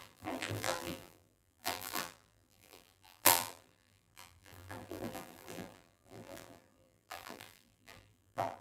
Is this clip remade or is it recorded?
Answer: remade